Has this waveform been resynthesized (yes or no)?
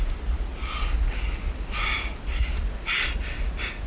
no